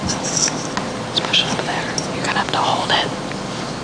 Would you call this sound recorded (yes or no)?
yes